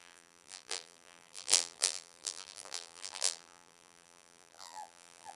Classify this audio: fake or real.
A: fake